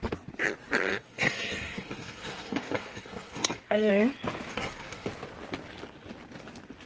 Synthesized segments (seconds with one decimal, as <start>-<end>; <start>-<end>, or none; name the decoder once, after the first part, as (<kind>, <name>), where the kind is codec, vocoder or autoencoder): 0.9-3.9 (codec, SNAC); 4.5-5.1